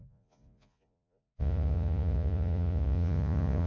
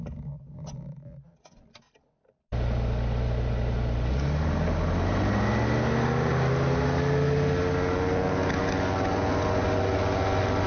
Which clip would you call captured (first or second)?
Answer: second